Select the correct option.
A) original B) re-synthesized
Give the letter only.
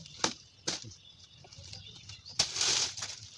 A